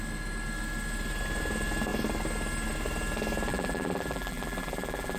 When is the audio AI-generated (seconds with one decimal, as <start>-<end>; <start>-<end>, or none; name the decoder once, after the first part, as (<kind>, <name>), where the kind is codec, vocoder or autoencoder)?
3.5-5.2 (vocoder, BigVGAN v2)